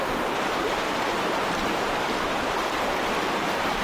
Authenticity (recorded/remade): remade